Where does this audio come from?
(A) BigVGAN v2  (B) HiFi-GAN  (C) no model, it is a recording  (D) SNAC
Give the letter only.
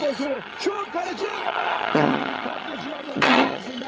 B